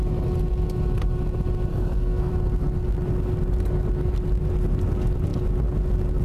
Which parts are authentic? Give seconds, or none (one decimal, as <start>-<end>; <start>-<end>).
0.0-1.7; 2.3-6.2